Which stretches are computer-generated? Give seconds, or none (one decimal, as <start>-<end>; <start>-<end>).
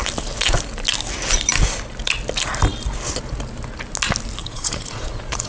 4.4-5.5